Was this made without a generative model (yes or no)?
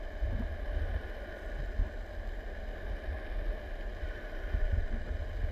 yes